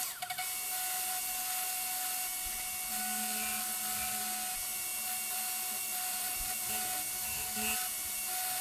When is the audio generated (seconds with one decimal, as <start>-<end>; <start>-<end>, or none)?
4.9-6.7